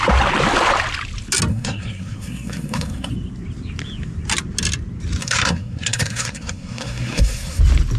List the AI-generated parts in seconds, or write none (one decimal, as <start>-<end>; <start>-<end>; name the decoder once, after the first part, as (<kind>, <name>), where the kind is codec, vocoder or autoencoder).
1.5-3.1 (codec, SNAC); 5.2-7.6